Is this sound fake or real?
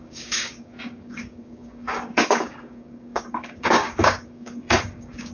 fake